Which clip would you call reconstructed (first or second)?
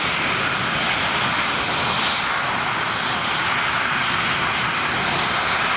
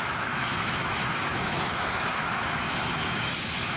second